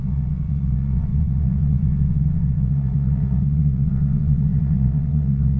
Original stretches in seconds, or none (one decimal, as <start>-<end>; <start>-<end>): none

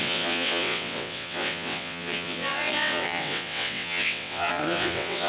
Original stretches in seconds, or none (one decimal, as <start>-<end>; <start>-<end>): none

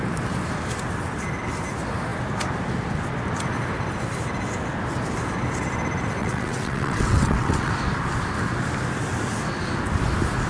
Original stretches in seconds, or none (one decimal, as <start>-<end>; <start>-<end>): 0.0-6.2; 7.7-10.5

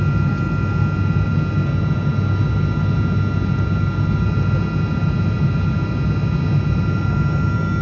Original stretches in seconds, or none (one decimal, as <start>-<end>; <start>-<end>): 0.0-7.8

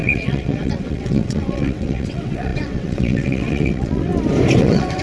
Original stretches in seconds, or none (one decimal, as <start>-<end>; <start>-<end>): 4.1-4.6